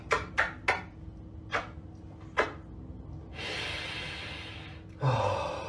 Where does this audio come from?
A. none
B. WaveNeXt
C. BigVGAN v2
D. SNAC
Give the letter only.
A